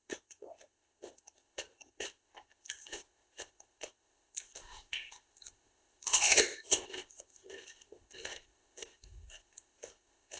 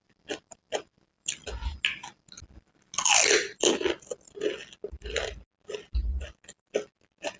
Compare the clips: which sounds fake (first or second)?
first